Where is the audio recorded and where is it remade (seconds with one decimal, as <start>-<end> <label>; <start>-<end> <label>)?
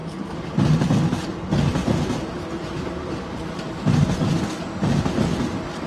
0.0-0.9 remade; 0.9-1.7 recorded; 1.7-4.2 remade; 4.2-5.9 recorded